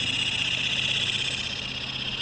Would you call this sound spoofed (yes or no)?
no